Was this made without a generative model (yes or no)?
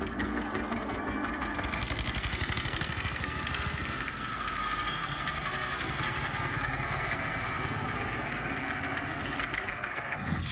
no